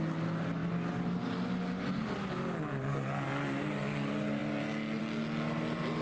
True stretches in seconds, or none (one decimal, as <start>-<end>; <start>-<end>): 0.0-6.0